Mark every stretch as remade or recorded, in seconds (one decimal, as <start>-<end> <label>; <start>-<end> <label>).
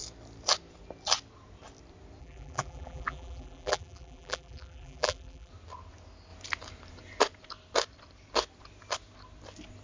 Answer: 0.0-2.2 recorded; 2.2-5.5 remade; 5.5-9.8 recorded